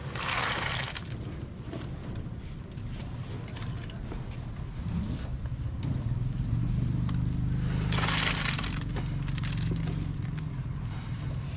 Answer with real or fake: real